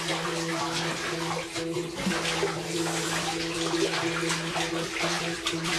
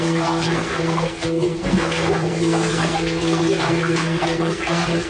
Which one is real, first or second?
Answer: first